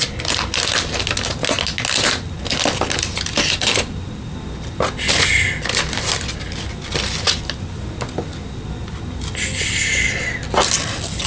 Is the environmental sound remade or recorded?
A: recorded